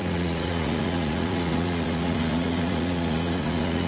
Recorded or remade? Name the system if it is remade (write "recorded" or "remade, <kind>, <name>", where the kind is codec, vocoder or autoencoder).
remade, vocoder, Vocos